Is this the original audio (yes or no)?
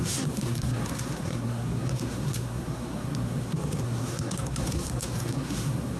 no